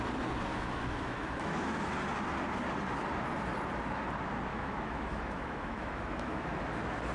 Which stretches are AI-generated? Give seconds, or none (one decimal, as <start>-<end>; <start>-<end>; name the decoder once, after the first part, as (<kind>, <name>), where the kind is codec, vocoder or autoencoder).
0.5-1.9 (autoencoder, DAC-VAE); 4.5-6.6